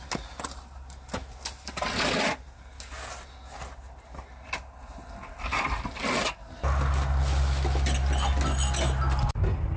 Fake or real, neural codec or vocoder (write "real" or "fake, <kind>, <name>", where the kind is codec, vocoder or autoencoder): real